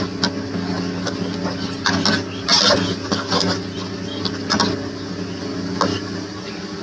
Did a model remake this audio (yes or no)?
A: no